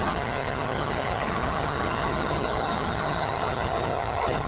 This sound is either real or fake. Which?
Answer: fake